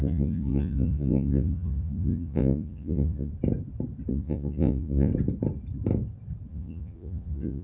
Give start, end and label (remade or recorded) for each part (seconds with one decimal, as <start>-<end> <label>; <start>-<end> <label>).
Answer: 0.0-3.3 remade; 3.3-4.1 recorded; 4.1-5.1 remade; 5.1-6.5 recorded; 6.5-7.6 remade